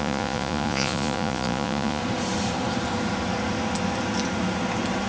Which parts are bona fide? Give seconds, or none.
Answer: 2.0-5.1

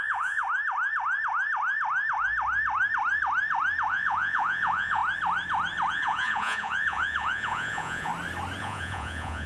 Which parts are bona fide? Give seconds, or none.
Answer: 0.4-3.9; 5.0-5.9; 8.1-8.6

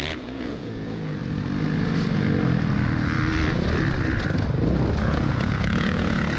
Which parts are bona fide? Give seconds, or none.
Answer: 1.2-5.0

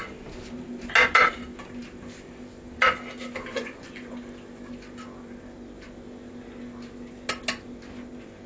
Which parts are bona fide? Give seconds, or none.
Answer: 0.0-3.5; 4.1-8.5

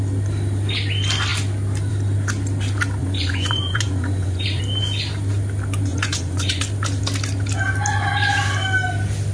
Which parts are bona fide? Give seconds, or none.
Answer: 0.0-3.0; 4.6-5.9; 6.6-9.3

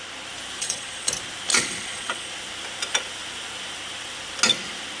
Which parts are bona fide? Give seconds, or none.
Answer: 0.0-0.6; 1.1-1.5; 2.3-5.0

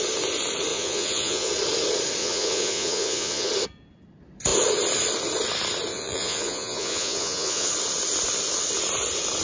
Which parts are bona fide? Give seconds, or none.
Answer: 0.0-0.7; 1.5-2.2; 3.5-5.9; 7.7-9.4

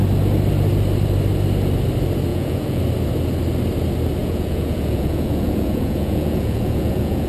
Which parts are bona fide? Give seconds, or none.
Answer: 0.0-2.3; 2.8-4.2